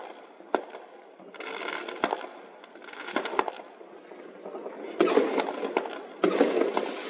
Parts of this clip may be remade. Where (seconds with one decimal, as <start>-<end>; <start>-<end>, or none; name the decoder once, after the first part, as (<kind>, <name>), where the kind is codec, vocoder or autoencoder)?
none